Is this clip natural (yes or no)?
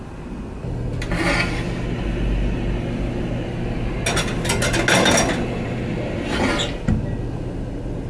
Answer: yes